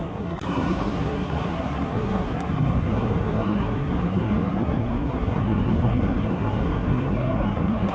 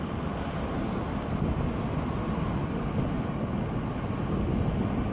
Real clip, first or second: second